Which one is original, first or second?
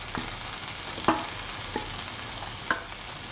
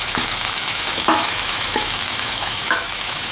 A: first